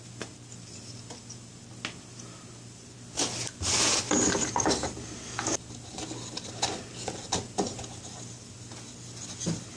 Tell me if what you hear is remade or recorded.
recorded